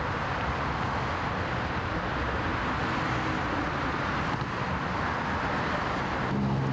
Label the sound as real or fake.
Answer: real